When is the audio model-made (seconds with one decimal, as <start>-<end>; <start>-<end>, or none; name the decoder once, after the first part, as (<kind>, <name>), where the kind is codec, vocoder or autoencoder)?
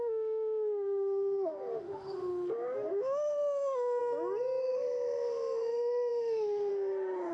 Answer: 0.0-4.0 (autoencoder, DAC-VAE); 4.6-7.3